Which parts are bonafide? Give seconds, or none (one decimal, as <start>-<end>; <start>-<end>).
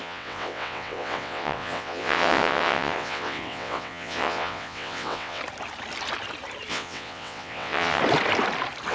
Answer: 5.4-6.7; 8.0-8.9